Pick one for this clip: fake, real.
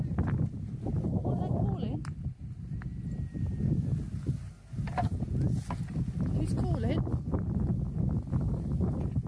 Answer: real